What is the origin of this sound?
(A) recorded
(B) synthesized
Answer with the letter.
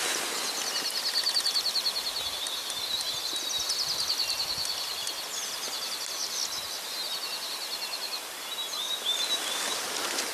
A